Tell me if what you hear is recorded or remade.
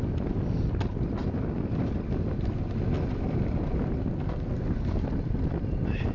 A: recorded